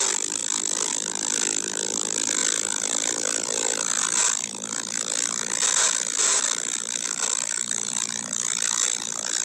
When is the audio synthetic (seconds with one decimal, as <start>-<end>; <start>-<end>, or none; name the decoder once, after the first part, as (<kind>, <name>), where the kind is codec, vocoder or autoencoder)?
none